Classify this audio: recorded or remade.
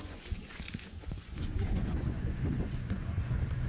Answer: remade